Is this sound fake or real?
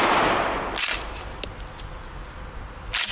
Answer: real